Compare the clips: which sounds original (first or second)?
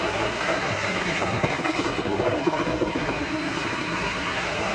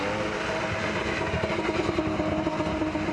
second